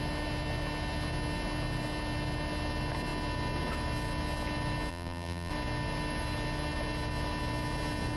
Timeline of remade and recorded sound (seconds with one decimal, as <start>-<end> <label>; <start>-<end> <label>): 0.0-4.9 recorded; 4.9-5.5 remade; 5.5-8.2 recorded